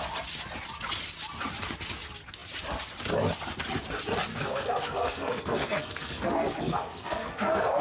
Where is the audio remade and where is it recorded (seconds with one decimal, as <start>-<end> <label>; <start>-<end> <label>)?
0.0-4.3 recorded; 4.3-7.8 remade